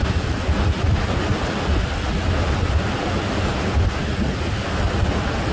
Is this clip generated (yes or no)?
no